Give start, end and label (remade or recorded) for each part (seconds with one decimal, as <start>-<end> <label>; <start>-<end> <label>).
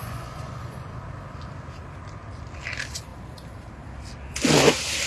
0.0-1.0 remade; 1.0-5.1 recorded